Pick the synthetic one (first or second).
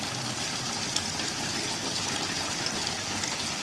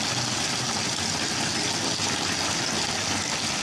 first